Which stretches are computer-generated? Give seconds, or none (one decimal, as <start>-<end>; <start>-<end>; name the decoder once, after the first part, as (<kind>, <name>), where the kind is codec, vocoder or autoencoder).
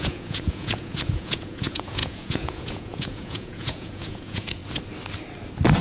0.0-4.6 (vocoder, Vocos)